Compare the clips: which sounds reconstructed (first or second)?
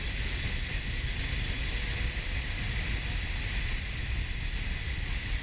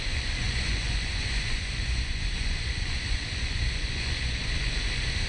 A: second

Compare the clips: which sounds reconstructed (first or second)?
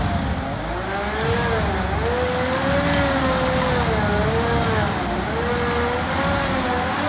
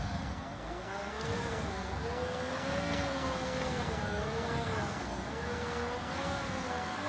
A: second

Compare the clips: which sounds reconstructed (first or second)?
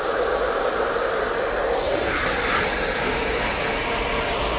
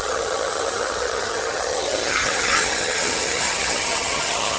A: second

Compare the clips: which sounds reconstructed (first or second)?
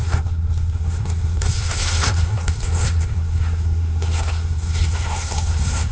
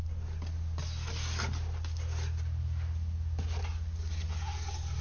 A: first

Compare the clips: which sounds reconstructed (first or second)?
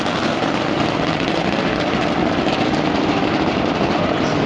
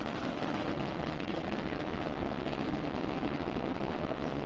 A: second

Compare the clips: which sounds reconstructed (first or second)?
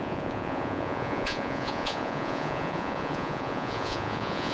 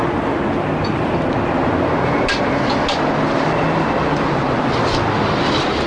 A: first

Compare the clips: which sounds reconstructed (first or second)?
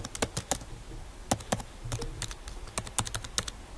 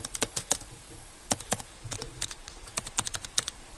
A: second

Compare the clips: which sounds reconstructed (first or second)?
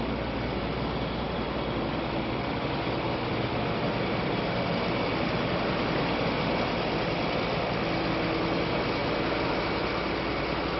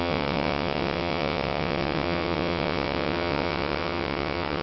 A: second